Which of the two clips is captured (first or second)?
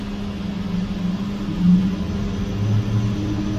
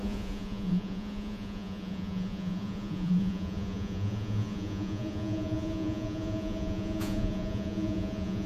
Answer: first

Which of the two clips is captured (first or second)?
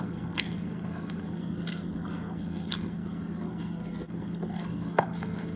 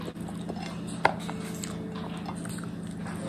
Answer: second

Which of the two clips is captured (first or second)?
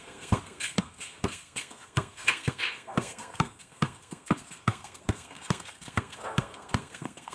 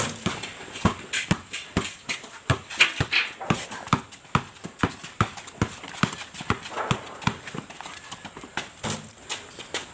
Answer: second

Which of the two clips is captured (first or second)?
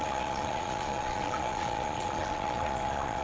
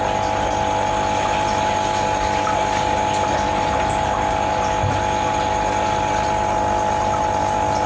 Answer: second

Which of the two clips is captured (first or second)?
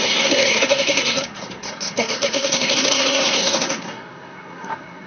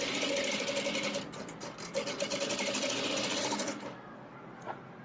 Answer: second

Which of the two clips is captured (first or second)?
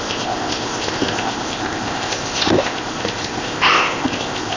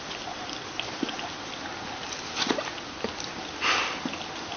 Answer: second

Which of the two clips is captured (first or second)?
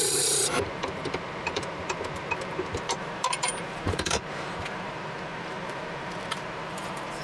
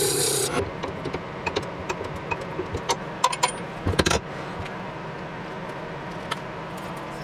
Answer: second